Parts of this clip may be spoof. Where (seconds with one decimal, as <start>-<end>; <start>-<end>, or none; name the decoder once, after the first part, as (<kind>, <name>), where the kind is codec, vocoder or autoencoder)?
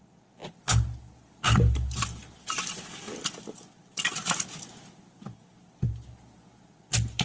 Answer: none